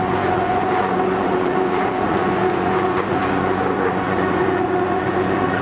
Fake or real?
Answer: fake